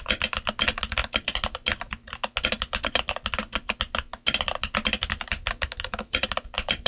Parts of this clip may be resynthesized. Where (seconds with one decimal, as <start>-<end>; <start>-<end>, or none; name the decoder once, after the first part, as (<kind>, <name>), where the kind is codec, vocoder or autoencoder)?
none